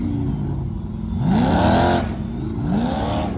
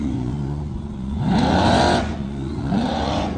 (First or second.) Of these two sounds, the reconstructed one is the second